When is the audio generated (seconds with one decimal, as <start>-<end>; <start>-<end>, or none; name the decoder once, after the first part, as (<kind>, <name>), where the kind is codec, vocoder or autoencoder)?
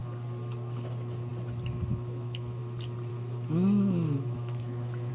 1.9-2.6 (autoencoder, DAC-VAE); 3.1-5.1